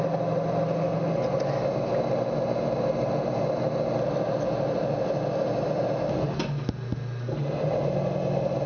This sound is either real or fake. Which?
real